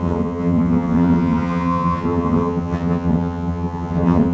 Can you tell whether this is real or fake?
fake